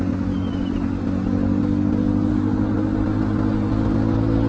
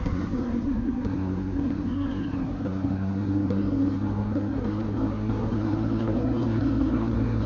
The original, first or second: first